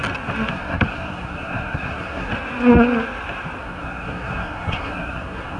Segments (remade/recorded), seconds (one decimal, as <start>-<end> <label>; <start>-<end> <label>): 0.0-0.5 recorded; 0.5-2.3 remade; 2.3-3.6 recorded; 3.6-5.6 remade